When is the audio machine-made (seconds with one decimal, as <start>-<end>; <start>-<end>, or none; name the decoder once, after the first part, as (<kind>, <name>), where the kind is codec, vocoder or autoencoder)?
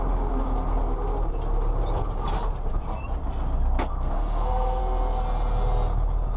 3.9-4.8 (codec, SNAC)